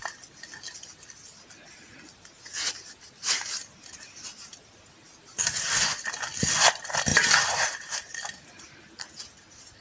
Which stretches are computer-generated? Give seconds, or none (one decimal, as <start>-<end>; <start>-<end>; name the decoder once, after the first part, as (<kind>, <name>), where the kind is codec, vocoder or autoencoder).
none

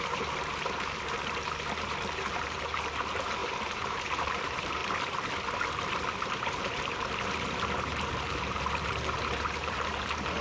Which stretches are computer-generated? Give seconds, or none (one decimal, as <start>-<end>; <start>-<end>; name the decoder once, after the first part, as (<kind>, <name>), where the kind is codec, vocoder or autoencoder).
0.0-4.8 (vocoder, BigVGAN v2); 6.1-10.4